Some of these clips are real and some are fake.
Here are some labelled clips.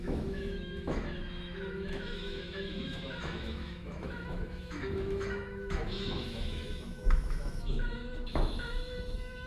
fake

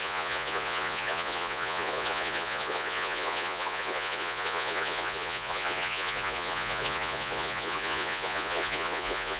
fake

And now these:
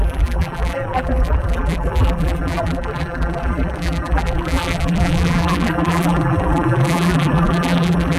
fake